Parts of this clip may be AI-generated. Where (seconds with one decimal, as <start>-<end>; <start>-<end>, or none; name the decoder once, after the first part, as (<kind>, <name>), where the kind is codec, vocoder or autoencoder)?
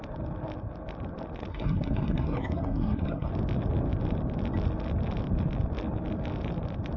1.5-3.3 (codec, SNAC)